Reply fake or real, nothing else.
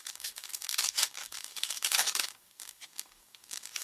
fake